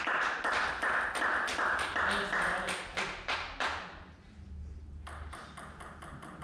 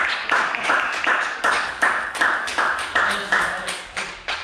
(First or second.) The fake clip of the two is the second